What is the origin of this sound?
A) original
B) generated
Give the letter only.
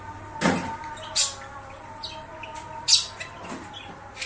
A